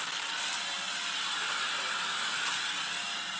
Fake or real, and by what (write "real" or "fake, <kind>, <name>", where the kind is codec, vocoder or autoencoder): real